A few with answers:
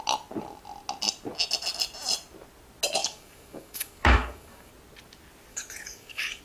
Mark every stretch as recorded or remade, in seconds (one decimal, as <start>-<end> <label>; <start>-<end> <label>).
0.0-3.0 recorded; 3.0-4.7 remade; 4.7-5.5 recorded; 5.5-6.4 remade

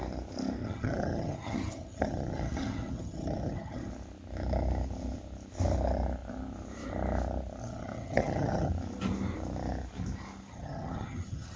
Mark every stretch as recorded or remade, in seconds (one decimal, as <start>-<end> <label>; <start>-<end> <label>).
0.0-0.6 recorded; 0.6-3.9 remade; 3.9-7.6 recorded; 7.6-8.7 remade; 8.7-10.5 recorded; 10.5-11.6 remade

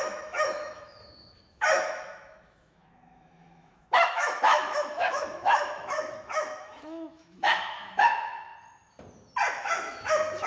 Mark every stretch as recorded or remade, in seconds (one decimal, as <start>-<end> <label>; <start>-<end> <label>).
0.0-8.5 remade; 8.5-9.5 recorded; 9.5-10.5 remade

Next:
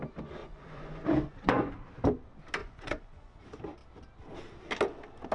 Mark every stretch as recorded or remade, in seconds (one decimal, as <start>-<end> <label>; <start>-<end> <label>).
0.0-0.4 recorded; 0.4-1.7 remade; 1.7-2.6 recorded; 2.6-3.4 remade; 3.4-5.3 recorded